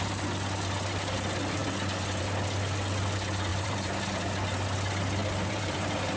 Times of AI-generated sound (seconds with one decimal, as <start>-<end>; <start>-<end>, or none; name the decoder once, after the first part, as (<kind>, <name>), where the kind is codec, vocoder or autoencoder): 3.5-4.3 (vocoder, BigVGAN v2); 5.2-6.2